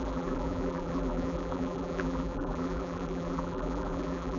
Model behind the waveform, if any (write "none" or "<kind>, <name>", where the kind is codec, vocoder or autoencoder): vocoder, BigVGAN v2